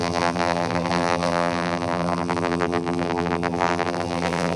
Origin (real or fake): fake